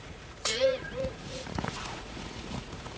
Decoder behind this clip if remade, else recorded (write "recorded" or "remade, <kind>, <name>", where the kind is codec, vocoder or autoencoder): remade, vocoder, Vocos